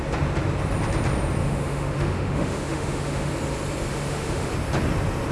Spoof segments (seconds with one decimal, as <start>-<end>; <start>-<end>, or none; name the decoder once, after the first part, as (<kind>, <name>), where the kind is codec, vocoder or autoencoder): 1.4-3.3 (autoencoder, DAC-VAE); 3.9-4.5